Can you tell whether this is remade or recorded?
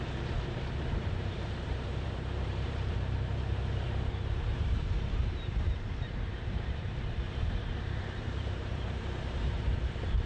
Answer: remade